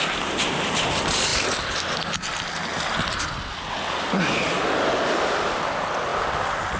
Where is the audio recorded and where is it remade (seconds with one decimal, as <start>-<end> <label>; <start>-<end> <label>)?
0.0-6.8 recorded